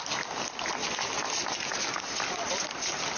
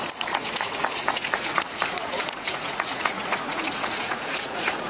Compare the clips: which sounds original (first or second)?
first